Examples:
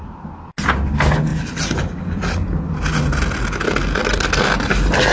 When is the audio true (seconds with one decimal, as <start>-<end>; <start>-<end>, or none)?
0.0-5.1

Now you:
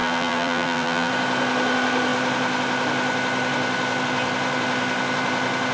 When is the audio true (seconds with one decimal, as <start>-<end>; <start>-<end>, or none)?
1.1-5.7

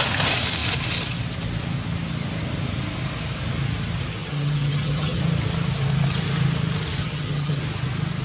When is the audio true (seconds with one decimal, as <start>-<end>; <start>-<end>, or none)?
0.0-4.2; 5.2-7.0; 7.6-8.2

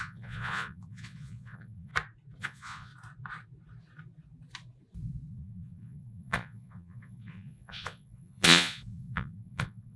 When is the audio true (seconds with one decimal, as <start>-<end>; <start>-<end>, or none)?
1.9-2.4; 2.9-5.3